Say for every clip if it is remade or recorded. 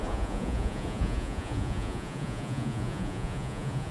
remade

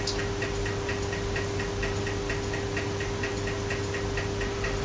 recorded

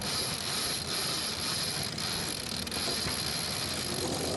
recorded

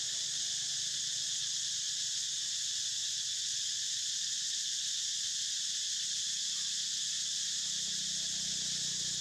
recorded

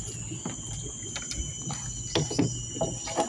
recorded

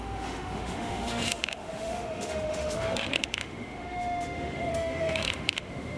remade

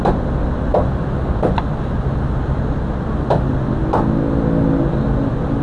recorded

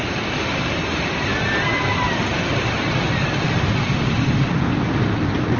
recorded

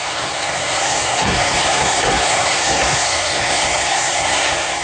remade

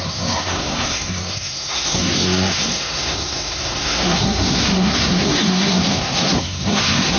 remade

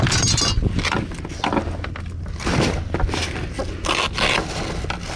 recorded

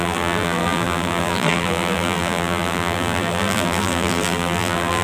remade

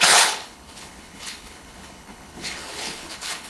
remade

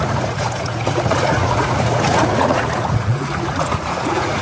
remade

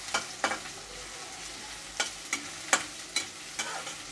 recorded